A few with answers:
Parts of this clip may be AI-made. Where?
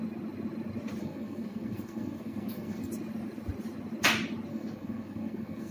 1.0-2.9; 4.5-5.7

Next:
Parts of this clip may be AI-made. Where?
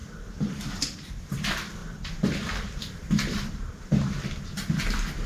0.0-1.4; 1.8-4.4